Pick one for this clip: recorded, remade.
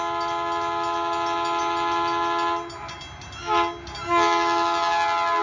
recorded